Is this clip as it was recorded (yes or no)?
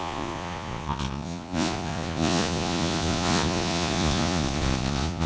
no